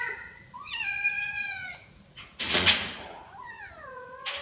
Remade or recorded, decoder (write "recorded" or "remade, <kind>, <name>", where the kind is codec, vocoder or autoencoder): remade, vocoder, Vocos